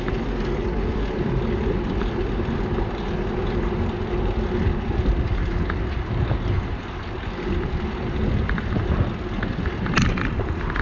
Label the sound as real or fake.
real